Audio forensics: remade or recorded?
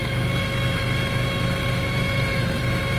recorded